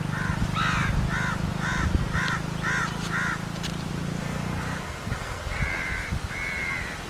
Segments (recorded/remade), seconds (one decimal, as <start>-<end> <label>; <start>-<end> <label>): 0.0-4.2 recorded; 4.2-5.6 remade; 5.6-7.1 recorded